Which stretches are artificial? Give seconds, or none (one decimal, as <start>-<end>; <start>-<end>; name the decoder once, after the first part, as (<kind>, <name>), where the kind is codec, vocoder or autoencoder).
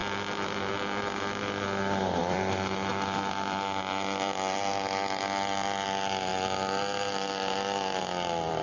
0.7-8.6 (vocoder, BigVGAN v2)